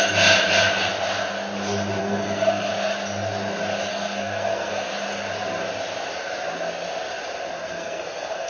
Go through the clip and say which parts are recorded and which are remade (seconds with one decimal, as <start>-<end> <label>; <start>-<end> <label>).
0.0-2.0 recorded; 2.0-2.7 remade; 2.7-3.9 recorded; 3.9-4.9 remade; 4.9-7.5 recorded; 7.5-8.5 remade

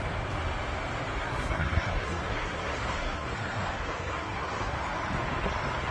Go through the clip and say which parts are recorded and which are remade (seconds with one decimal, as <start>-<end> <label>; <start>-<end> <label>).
0.0-1.2 recorded; 1.2-4.7 remade; 4.7-5.9 recorded